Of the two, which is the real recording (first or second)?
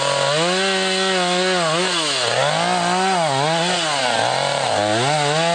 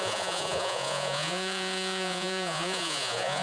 first